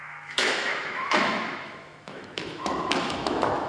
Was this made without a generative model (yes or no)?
no